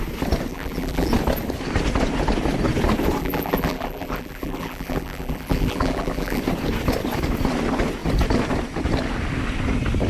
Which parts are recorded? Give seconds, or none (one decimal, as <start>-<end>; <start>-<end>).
0.0-0.5; 1.1-3.2; 6.4-10.1